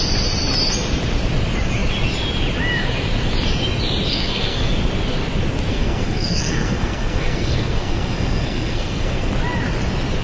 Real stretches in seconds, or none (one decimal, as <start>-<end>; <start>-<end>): 0.0-4.1; 4.7-5.7; 9.3-10.2